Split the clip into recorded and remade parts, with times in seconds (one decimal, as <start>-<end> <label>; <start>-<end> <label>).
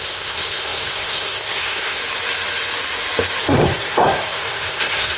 0.0-2.0 remade; 2.0-3.4 recorded; 3.4-5.2 remade